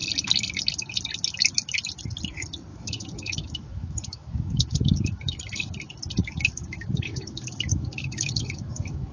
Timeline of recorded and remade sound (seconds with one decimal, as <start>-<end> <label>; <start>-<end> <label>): 0.0-2.7 recorded; 2.7-5.4 remade; 5.4-6.2 recorded; 6.2-9.1 remade